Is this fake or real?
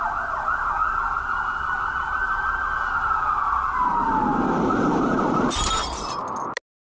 real